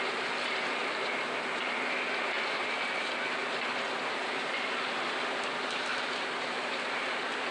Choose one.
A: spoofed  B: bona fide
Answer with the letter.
B